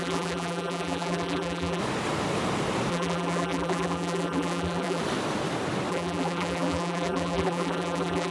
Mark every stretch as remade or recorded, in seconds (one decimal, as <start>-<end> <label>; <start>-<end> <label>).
0.0-1.8 remade; 1.8-2.9 recorded; 2.9-5.0 remade; 5.0-5.9 recorded; 5.9-8.3 remade